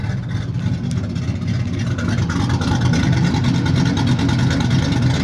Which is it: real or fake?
real